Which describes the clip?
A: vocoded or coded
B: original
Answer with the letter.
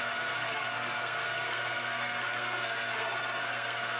A